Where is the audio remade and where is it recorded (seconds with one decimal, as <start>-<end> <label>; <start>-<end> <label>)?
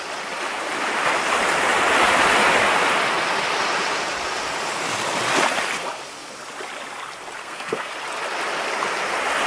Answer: 0.0-7.4 recorded; 7.4-7.9 remade; 7.9-9.5 recorded